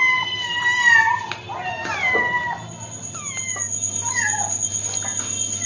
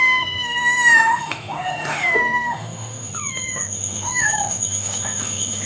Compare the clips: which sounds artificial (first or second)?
second